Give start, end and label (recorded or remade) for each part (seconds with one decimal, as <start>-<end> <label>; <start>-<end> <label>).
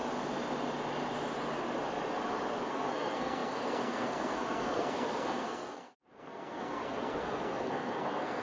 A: 0.0-2.7 recorded; 2.7-8.4 remade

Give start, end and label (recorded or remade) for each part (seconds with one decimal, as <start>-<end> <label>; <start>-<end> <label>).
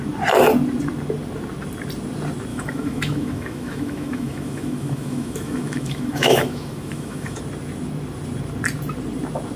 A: 0.0-2.5 recorded; 2.5-7.4 remade; 7.4-9.6 recorded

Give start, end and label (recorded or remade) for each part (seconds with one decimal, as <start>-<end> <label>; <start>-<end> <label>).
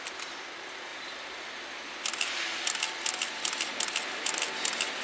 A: 0.0-5.0 recorded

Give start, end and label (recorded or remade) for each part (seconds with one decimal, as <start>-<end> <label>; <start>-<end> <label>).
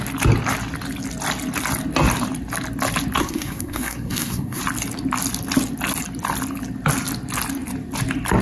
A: 0.0-3.2 recorded; 3.2-4.6 remade; 4.6-8.4 recorded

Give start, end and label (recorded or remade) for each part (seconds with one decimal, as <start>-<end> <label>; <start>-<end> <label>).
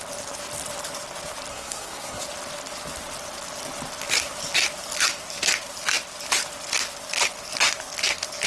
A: 0.0-1.5 recorded; 1.5-2.2 remade; 2.2-8.5 recorded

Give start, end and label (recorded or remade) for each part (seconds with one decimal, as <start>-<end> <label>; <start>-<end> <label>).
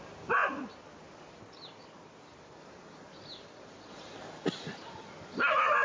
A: 0.0-5.8 recorded